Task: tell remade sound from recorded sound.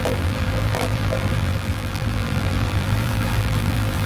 remade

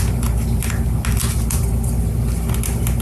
recorded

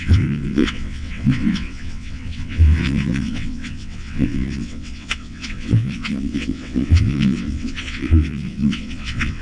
remade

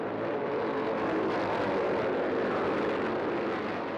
recorded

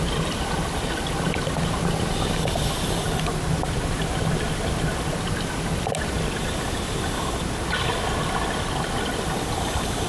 recorded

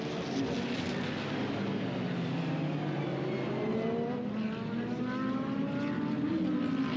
recorded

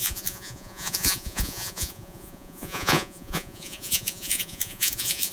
remade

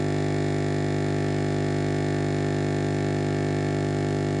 recorded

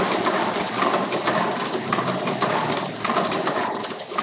recorded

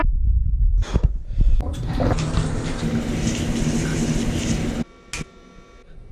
recorded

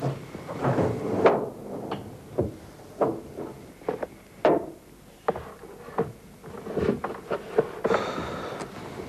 recorded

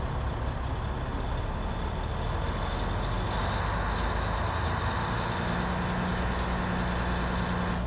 recorded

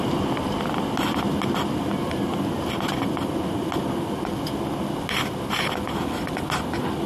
recorded